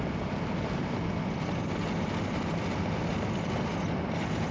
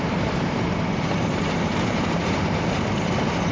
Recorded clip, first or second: first